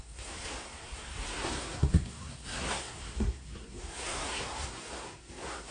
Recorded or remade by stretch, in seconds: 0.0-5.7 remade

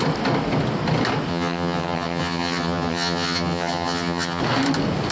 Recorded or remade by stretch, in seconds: 0.0-1.3 recorded; 1.3-4.4 remade; 4.4-5.1 recorded

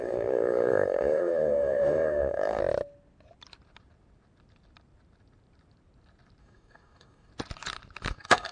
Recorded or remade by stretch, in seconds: 0.0-2.6 remade; 2.6-6.4 recorded; 6.4-7.3 remade; 7.3-8.1 recorded; 8.1-8.5 remade

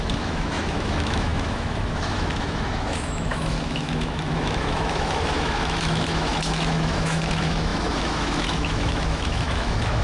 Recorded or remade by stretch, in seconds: 0.0-10.0 remade

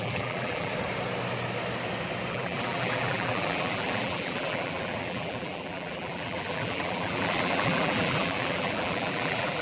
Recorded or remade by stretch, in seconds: 0.0-0.7 remade; 0.7-2.3 recorded; 2.3-9.6 remade